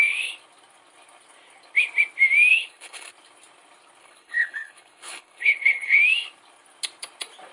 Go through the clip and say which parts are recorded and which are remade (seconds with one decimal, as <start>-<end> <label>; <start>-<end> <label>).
0.0-2.5 recorded; 2.5-3.1 remade; 3.1-4.0 recorded; 4.0-6.0 remade; 6.0-7.5 recorded